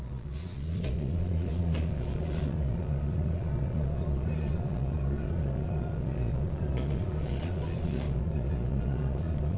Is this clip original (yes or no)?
no